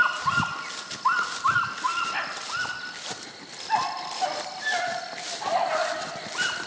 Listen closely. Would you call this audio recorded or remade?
recorded